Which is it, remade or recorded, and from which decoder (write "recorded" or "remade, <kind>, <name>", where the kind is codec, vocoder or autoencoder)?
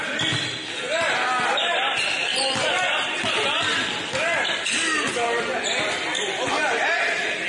recorded